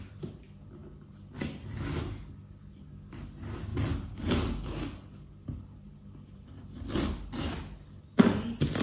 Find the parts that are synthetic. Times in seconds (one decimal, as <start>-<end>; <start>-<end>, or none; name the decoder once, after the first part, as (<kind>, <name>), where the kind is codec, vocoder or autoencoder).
none